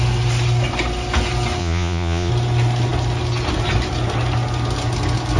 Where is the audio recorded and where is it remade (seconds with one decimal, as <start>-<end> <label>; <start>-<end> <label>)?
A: 0.0-1.6 recorded; 1.6-2.3 remade; 2.3-5.4 recorded